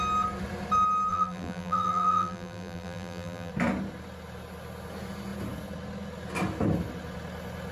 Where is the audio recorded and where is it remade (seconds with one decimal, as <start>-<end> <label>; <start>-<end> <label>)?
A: 0.0-1.1 recorded; 1.1-3.5 remade; 3.5-7.7 recorded